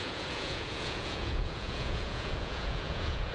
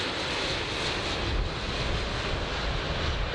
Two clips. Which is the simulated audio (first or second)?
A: first